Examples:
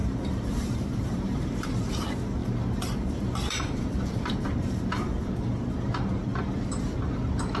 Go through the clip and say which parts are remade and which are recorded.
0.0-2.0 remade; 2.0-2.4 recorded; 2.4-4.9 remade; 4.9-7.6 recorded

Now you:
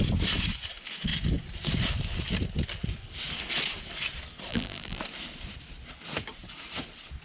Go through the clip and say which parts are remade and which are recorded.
0.0-4.5 recorded; 4.5-5.0 remade; 5.0-7.2 recorded

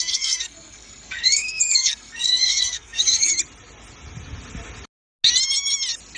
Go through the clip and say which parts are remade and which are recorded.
0.0-3.3 remade; 3.3-6.2 recorded

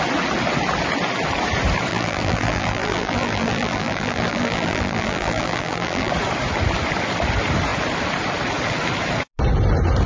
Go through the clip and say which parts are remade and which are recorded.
0.0-1.9 recorded; 1.9-6.1 remade; 6.1-10.1 recorded

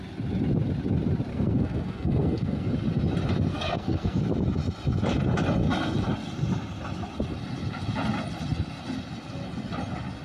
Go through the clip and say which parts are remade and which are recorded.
0.0-1.3 recorded; 1.3-2.7 remade; 2.7-3.5 recorded; 3.5-4.2 remade; 4.2-10.2 recorded